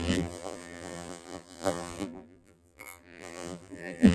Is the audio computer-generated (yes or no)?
yes